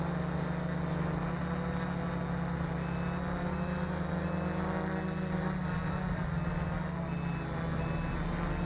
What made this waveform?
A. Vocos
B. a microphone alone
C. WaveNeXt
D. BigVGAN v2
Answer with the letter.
B